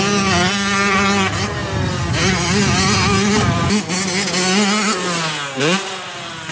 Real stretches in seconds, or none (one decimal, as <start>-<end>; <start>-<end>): 0.0-6.5